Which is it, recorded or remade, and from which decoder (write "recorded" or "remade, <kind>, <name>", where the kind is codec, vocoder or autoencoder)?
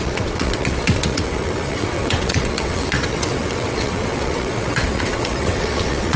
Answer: remade, vocoder, WaveNeXt